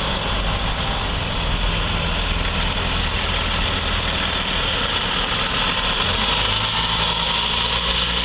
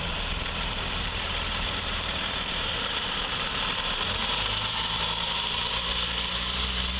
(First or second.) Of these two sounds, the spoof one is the second